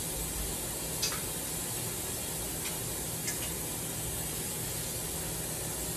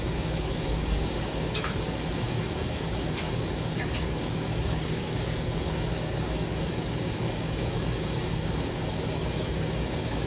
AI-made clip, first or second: second